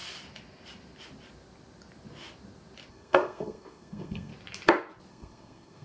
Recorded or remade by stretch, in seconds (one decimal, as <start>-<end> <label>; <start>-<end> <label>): 0.0-2.9 recorded; 2.9-4.3 remade; 4.3-5.1 recorded; 5.1-5.8 remade